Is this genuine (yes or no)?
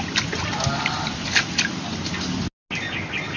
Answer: yes